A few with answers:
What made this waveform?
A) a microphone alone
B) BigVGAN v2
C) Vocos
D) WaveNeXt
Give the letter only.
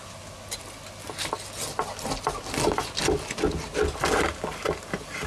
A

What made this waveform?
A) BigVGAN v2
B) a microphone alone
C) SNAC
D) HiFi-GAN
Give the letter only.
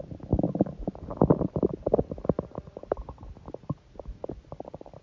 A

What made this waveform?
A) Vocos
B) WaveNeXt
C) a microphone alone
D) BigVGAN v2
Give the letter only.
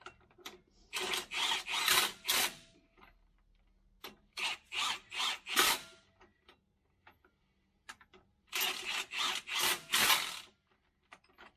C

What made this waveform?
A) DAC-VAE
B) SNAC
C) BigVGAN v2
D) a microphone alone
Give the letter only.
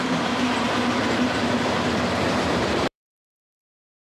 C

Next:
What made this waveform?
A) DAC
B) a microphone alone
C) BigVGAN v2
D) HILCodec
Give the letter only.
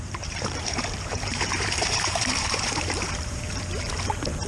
C